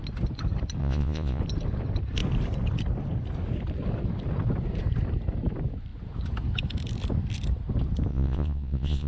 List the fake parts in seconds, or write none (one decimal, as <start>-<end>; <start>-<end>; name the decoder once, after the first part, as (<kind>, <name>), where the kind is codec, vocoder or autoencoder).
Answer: 0.8-1.4 (vocoder, Vocos); 8.1-9.1